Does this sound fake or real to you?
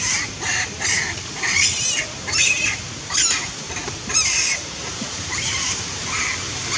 fake